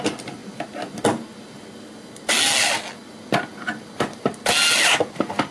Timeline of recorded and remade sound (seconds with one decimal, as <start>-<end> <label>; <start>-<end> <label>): 0.0-5.5 recorded